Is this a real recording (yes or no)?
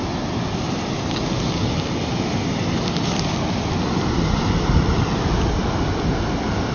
yes